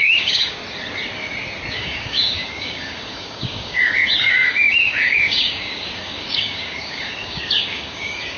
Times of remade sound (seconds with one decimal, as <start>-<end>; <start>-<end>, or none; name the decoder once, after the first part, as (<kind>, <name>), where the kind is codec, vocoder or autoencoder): 0.0-0.6 (codec, DAC); 1.7-8.4